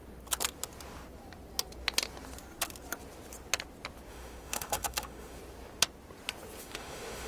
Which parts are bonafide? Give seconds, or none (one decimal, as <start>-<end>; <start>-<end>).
0.0-4.1; 5.4-6.6